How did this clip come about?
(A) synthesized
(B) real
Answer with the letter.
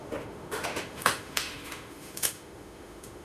A